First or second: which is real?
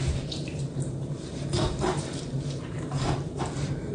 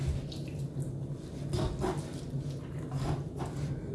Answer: second